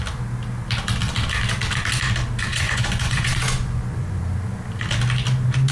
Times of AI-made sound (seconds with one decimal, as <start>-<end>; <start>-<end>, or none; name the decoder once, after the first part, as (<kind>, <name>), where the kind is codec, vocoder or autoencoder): 2.5-4.2 (vocoder, Vocos)